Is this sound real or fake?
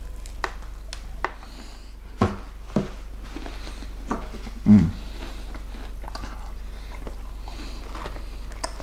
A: real